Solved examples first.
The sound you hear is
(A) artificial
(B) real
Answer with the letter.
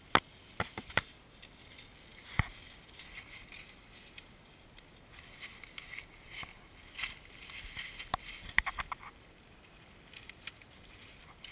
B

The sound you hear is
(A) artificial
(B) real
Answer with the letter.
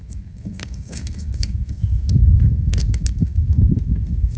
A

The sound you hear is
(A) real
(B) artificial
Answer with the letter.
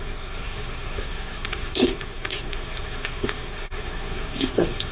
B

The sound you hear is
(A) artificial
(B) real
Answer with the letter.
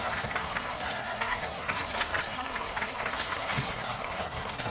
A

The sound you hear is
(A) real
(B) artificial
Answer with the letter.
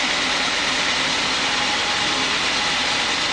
A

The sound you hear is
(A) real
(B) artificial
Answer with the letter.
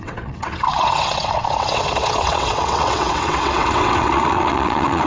B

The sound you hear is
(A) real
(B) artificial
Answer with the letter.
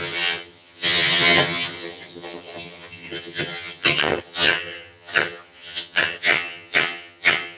B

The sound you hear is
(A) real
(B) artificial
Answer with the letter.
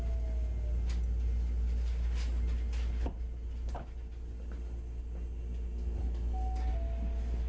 A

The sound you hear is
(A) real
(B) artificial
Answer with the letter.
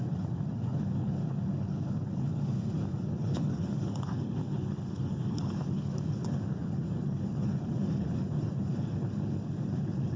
B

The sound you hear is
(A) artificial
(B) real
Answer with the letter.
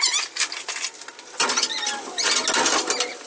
B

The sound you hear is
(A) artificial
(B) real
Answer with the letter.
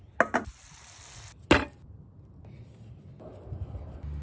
B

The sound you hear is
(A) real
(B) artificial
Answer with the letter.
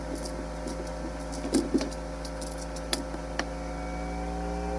A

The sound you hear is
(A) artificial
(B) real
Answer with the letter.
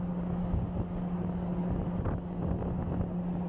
B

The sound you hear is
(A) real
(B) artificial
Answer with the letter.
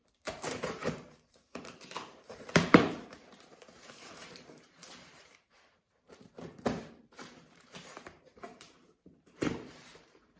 B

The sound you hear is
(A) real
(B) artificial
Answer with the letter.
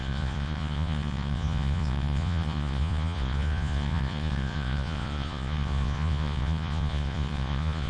B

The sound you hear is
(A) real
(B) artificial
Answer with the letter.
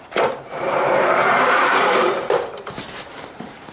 B